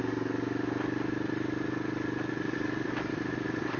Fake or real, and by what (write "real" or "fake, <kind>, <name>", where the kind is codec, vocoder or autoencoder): real